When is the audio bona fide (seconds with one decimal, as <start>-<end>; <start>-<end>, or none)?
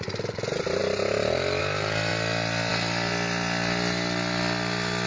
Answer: 0.0-5.1